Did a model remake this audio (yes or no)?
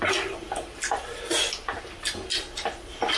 no